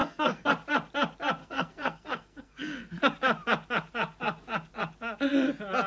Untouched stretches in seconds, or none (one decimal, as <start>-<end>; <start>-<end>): 0.5-1.4; 3.0-5.9